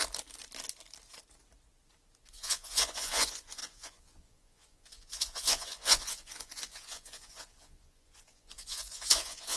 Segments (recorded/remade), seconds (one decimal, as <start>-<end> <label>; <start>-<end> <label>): 0.0-2.3 recorded; 2.3-9.6 remade